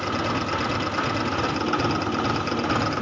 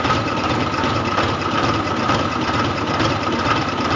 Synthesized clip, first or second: second